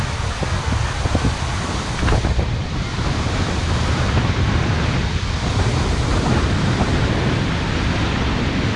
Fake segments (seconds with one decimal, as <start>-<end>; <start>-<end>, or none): 2.9-6.8